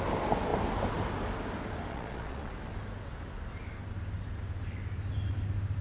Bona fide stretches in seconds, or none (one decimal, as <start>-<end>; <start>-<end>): 0.0-1.9; 2.5-5.8